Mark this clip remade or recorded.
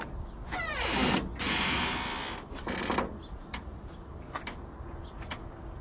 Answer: recorded